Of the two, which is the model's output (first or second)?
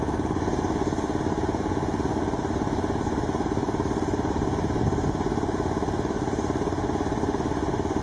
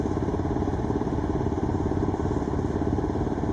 second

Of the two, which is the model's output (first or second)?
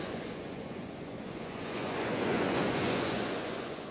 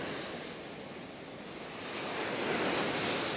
first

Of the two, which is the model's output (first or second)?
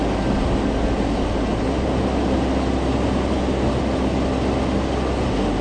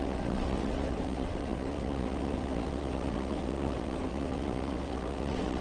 second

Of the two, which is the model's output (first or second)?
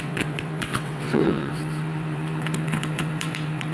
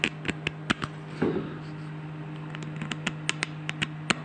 first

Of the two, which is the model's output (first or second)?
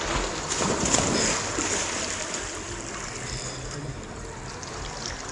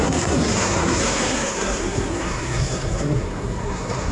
second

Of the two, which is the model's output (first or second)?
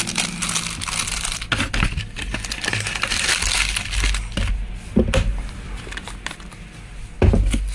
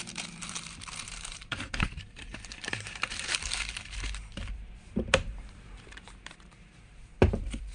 second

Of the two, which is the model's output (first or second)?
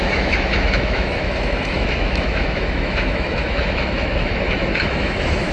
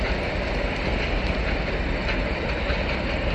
first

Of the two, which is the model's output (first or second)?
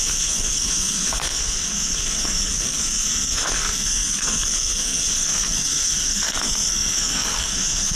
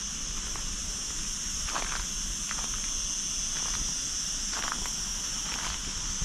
first